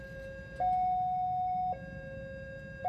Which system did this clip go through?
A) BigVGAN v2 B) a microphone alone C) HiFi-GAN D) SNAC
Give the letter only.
B